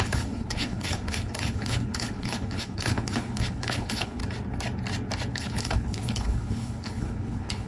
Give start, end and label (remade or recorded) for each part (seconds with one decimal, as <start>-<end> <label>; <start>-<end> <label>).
0.0-4.2 remade; 4.2-5.3 recorded; 5.3-7.7 remade